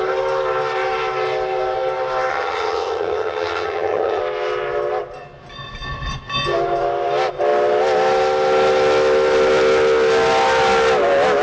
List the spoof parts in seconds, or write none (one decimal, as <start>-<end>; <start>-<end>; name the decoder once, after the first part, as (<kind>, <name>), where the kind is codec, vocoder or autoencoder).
2.3-4.2 (vocoder, HiFi-GAN)